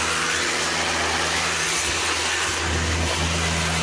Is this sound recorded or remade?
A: recorded